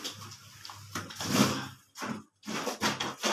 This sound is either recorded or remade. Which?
recorded